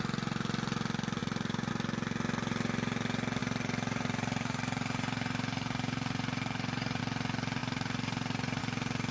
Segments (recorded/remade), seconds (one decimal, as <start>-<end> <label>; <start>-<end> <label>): 0.0-1.2 recorded; 1.2-1.7 remade; 1.7-3.4 recorded; 3.4-7.0 remade; 7.0-7.6 recorded; 7.6-8.6 remade; 8.6-9.1 recorded